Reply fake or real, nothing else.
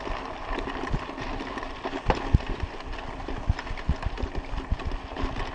real